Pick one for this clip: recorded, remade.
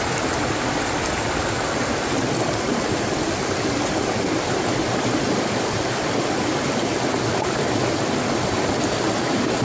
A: recorded